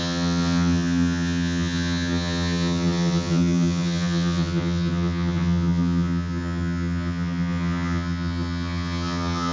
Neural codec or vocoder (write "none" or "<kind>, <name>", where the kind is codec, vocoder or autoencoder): vocoder, HiFi-GAN